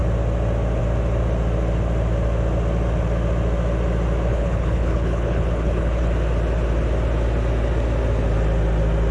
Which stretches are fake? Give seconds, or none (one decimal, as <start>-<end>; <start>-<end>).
4.3-6.1

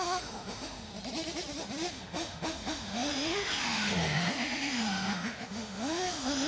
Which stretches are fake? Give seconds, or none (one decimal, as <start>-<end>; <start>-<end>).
0.0-0.9; 1.9-6.5

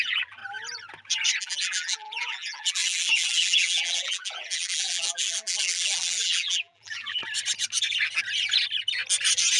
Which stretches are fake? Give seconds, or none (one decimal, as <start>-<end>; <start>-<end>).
0.0-0.4; 1.4-7.2

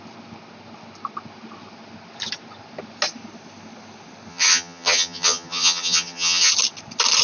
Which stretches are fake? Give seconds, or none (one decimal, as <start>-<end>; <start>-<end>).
4.3-6.5

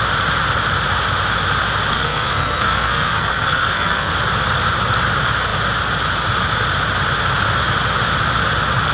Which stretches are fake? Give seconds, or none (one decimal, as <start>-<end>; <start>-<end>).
1.9-4.1